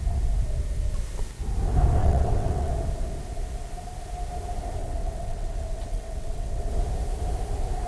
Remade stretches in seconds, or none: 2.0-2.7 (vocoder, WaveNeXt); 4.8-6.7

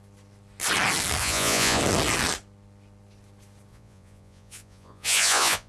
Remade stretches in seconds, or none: 1.2-1.8 (vocoder, Vocos); 3.7-5.7

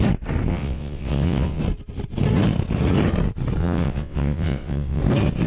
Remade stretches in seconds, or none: 0.5-1.6 (vocoder, WaveNeXt); 3.6-5.0

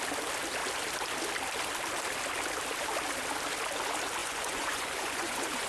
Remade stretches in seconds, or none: 4.2-5.7 (vocoder, Vocos)

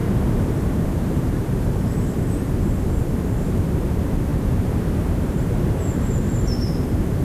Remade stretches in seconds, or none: 0.0-2.5 (vocoder, BigVGAN v2); 4.3-7.2

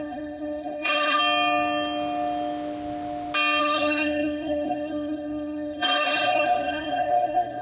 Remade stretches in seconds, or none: 0.0-1.2 (codec, SNAC); 3.6-7.6

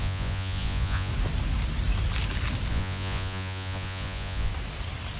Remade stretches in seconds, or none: 0.0-1.1 (vocoder, Vocos); 2.7-4.5

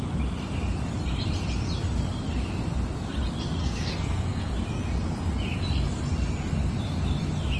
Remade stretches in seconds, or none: 3.6-4.5 (codec, SNAC)